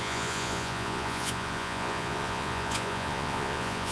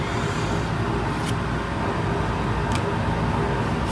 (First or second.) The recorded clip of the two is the second